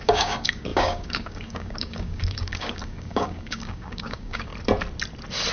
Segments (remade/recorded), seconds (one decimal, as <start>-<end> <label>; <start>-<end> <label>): 0.0-4.5 remade; 4.5-5.5 recorded